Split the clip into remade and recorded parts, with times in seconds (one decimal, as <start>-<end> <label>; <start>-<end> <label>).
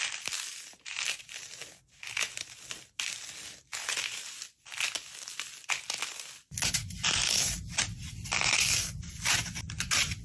0.0-0.5 recorded; 0.5-1.5 remade; 1.5-10.2 recorded